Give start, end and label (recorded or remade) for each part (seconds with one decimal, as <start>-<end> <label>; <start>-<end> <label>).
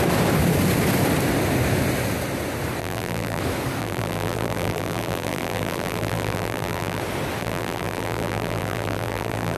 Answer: 0.0-2.8 recorded; 2.8-3.4 remade; 3.4-3.8 recorded; 3.8-7.0 remade; 7.0-7.4 recorded; 7.4-9.6 remade